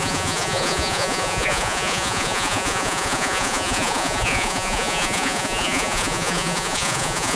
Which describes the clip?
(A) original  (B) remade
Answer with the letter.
B